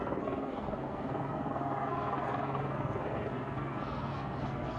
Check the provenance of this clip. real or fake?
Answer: fake